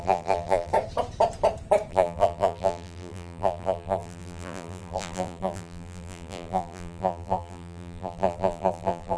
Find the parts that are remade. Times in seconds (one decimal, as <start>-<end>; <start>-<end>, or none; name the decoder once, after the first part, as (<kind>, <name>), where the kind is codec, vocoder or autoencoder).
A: 0.0-0.7 (vocoder, BigVGAN v2); 1.9-9.2